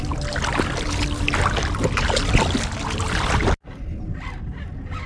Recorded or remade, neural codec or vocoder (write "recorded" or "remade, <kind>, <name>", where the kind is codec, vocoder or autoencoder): recorded